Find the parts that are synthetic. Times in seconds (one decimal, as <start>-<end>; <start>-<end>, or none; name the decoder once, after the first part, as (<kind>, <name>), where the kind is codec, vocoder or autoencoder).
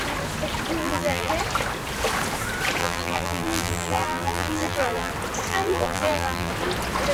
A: 0.8-1.3 (vocoder, BigVGAN v2); 2.8-5.1; 5.5-6.5